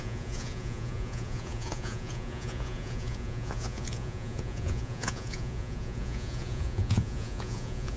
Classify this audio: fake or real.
fake